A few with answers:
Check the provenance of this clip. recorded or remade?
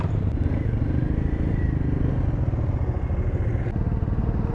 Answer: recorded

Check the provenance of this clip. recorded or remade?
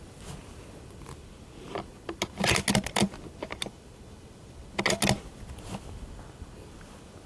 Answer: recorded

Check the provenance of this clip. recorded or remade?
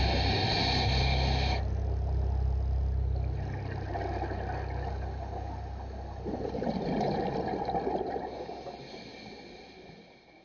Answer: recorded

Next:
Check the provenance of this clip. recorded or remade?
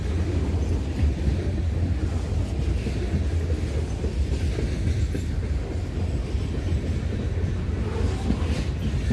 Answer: recorded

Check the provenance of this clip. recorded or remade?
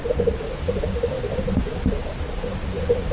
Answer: recorded